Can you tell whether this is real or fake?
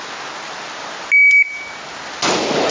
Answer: real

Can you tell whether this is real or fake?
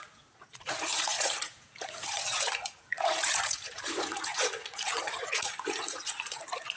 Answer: fake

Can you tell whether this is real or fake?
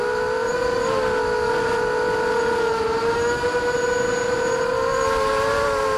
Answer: real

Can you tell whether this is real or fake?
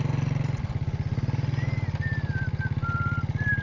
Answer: real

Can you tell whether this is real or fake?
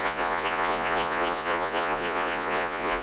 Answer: fake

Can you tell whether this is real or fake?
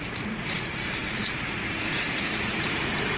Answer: fake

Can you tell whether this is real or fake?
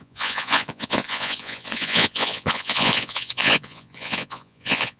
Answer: fake